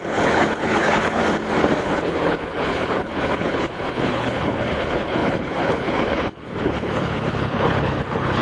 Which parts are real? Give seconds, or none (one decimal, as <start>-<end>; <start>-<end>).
1.2-1.8